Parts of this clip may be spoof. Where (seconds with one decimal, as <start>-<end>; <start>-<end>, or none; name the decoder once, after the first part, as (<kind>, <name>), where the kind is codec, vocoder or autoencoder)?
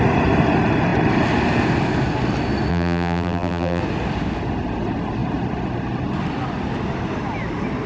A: 2.7-3.8 (vocoder, BigVGAN v2)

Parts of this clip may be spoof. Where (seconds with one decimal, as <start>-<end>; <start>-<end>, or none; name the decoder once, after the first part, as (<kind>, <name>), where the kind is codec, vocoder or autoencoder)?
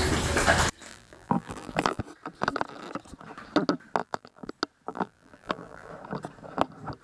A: 0.9-2.0 (vocoder, BigVGAN v2); 4.0-4.5; 4.9-5.9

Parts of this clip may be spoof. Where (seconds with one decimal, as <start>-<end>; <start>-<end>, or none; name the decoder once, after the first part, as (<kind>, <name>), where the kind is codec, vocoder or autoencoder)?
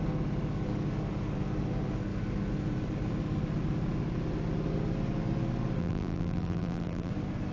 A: 5.8-7.1 (vocoder, BigVGAN v2)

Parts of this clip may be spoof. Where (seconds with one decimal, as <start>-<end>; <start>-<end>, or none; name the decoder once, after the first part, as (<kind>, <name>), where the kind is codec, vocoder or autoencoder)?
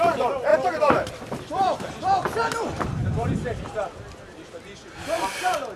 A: 0.5-1.1 (vocoder, BigVGAN v2); 2.4-3.7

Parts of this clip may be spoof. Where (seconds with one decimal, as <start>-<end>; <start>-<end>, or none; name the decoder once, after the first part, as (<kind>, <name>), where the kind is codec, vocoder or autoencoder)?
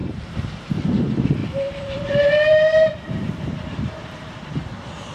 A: 1.4-4.5 (vocoder, BigVGAN v2)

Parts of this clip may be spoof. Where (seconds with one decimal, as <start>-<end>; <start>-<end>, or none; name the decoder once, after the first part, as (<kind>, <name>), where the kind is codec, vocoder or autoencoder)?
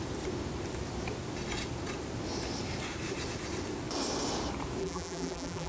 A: 4.8-5.7 (vocoder, BigVGAN v2)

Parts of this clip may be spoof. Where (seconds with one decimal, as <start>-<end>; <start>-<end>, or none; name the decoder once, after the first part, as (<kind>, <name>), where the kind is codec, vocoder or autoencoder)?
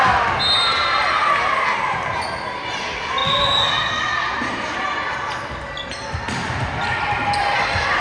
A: none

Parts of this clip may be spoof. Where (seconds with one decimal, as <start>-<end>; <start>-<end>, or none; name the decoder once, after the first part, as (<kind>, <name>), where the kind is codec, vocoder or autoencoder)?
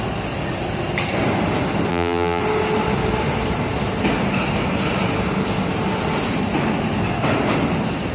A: 1.9-2.4 (vocoder, BigVGAN v2)